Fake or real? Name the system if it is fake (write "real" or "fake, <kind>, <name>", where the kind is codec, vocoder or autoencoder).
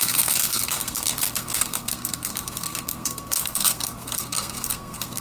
fake, codec, SNAC